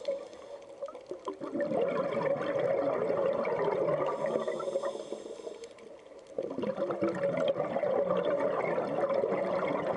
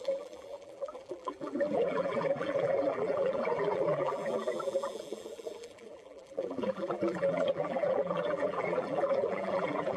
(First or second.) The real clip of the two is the first